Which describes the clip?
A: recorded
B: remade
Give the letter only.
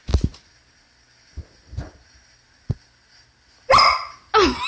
A